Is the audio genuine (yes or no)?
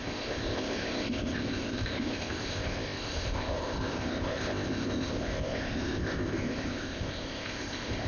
no